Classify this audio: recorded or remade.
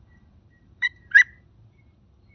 remade